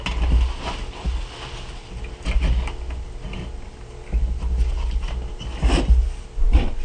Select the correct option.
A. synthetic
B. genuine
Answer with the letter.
B